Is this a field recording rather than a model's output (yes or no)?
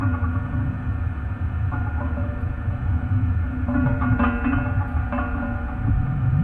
no